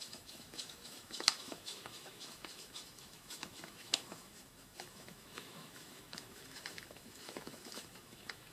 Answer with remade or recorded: remade